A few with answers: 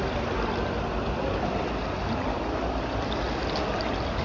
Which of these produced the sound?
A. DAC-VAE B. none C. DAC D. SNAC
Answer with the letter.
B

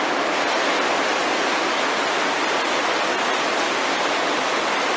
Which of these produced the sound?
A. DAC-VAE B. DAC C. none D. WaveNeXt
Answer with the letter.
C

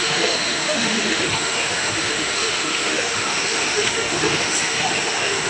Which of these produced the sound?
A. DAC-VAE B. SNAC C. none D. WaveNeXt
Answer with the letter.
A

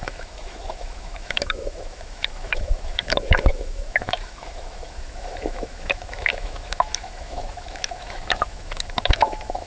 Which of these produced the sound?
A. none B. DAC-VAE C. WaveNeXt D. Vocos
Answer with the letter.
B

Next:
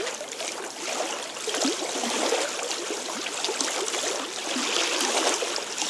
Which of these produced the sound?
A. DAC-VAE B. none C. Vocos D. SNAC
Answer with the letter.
B